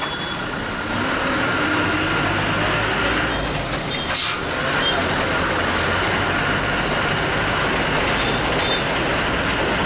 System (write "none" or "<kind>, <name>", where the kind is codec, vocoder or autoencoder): none